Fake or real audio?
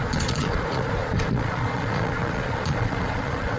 fake